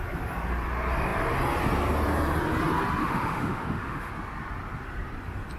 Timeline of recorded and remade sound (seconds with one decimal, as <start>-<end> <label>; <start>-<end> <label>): 0.0-3.0 recorded; 3.0-4.1 remade; 4.1-5.6 recorded